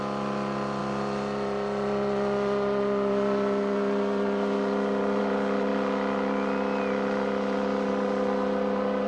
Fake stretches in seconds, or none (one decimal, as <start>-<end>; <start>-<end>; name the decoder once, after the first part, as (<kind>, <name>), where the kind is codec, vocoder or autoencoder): none